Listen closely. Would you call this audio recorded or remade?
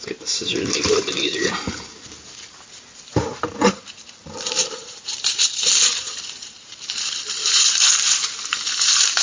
remade